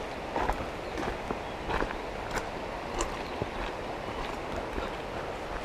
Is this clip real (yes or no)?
yes